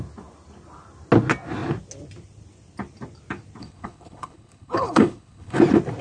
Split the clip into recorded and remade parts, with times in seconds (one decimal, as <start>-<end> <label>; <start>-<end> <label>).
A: 0.0-3.6 recorded; 3.6-5.6 remade; 5.6-6.0 recorded